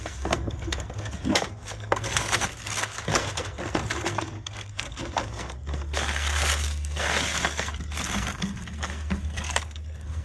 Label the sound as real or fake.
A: fake